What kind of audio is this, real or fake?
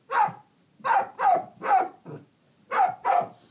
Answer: real